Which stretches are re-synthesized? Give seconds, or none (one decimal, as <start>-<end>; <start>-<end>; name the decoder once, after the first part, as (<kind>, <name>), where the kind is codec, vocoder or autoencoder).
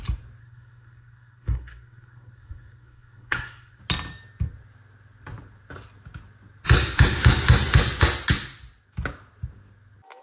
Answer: 0.4-3.8 (codec, SNAC)